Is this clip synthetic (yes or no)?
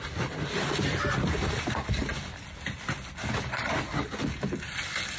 no